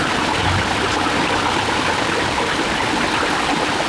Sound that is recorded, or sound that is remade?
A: recorded